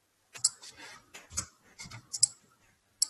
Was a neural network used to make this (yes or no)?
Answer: no